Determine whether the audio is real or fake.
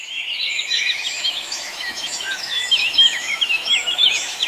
fake